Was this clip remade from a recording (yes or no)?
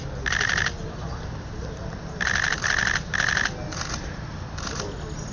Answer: no